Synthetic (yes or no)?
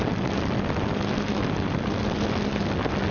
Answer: no